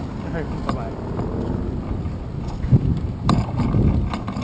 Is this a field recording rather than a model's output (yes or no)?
yes